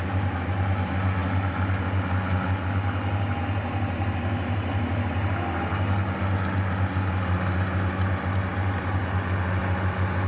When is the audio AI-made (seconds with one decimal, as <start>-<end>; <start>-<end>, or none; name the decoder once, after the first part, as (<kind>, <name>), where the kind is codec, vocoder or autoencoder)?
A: none